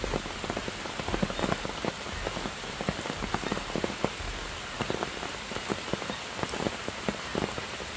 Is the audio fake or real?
real